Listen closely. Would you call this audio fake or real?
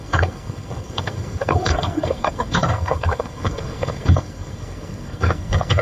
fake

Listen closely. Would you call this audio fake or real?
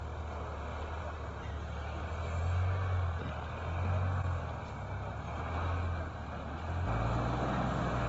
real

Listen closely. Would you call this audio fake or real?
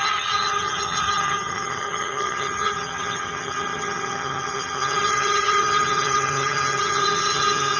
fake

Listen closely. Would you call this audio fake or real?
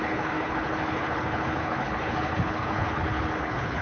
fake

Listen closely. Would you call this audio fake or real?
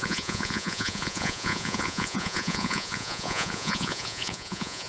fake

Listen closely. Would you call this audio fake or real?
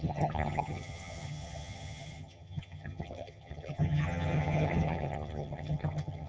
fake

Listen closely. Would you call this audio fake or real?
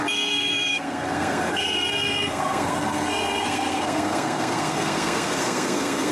fake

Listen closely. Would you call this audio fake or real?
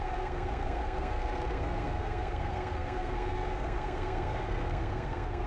fake